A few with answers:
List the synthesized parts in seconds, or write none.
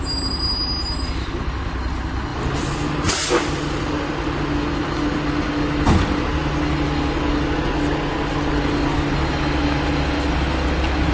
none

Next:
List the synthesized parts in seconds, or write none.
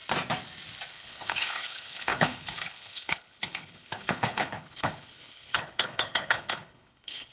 0.9-7.3 (codec, HILCodec)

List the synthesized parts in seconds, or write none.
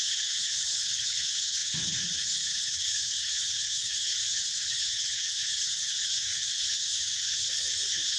0.0-8.2 (codec, HILCodec)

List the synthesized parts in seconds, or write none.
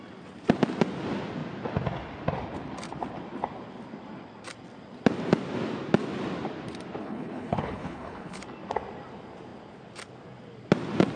7.0-8.4 (codec, HILCodec)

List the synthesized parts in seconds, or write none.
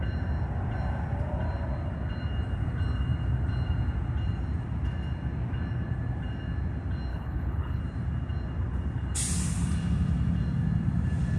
7.1-7.8 (codec, HILCodec)